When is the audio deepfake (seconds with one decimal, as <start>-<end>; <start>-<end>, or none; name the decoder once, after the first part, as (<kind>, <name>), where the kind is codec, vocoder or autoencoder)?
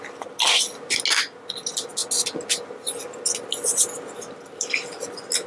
none